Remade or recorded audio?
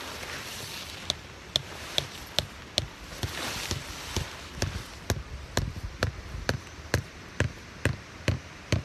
recorded